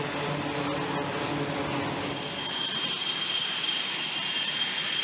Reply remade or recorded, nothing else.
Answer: recorded